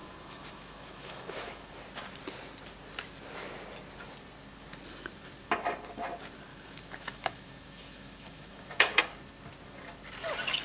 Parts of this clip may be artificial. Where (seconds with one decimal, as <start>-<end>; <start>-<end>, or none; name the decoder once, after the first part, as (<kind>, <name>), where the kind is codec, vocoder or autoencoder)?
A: 0.0-1.7 (autoencoder, DAC-VAE); 6.5-9.0